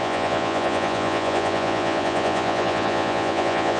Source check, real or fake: fake